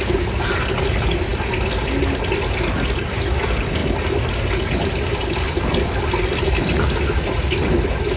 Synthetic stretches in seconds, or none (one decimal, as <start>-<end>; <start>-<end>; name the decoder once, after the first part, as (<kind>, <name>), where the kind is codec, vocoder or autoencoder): none